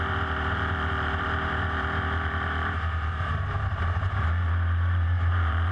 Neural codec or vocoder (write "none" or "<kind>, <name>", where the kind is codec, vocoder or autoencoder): vocoder, BigVGAN v2